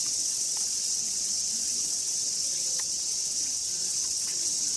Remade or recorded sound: remade